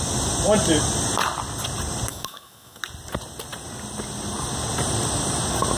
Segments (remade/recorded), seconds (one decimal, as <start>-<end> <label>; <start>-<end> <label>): 0.0-2.1 recorded; 2.1-2.8 remade; 2.8-5.8 recorded